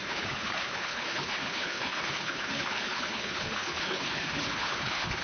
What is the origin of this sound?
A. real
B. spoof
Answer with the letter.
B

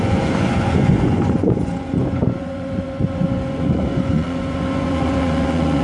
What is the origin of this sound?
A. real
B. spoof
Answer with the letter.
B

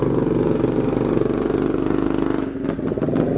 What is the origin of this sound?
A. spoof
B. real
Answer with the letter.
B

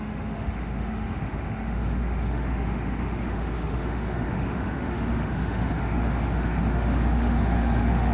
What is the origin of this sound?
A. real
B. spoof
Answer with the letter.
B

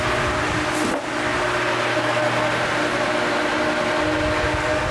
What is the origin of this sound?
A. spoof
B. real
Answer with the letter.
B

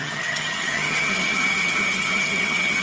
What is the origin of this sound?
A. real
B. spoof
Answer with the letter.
B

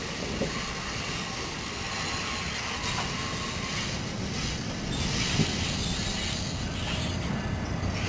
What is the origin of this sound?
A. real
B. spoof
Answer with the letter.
A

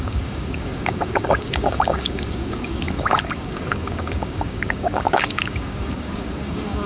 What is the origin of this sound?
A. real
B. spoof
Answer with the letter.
B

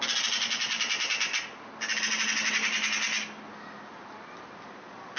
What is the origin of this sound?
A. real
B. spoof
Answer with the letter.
A